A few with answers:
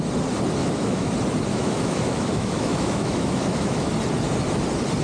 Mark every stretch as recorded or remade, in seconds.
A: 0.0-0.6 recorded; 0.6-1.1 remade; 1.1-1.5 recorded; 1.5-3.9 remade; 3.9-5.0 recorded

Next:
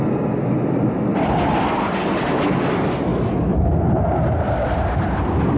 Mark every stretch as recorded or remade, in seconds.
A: 0.0-5.6 recorded

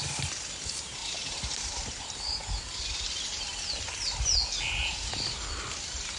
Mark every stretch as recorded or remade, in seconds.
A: 0.0-6.2 recorded